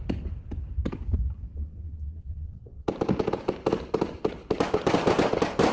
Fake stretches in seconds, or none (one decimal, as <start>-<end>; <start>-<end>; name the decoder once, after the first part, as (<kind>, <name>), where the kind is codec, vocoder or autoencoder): 1.5-2.8 (vocoder, WaveNeXt)